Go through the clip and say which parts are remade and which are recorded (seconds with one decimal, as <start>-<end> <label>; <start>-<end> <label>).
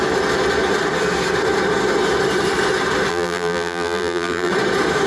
0.0-3.1 recorded; 3.1-4.5 remade; 4.5-5.1 recorded